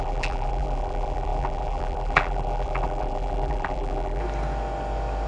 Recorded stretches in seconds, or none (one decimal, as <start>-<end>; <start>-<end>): 4.2-5.3